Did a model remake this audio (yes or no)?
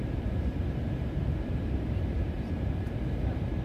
yes